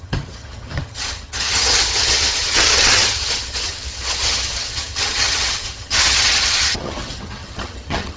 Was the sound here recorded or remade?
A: remade